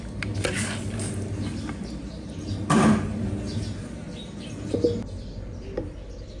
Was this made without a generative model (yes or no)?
yes